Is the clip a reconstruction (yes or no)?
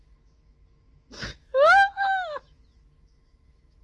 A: yes